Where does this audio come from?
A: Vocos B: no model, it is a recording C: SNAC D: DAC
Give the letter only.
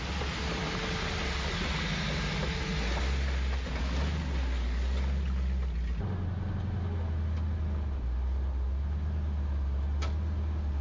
B